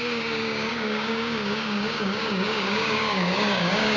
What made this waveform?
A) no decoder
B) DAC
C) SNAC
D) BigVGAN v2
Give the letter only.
B